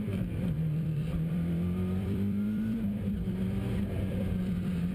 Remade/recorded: remade